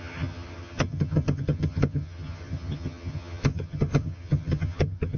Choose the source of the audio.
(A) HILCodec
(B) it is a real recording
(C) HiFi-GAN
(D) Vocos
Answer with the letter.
C